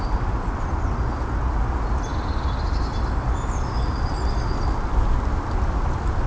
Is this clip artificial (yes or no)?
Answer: no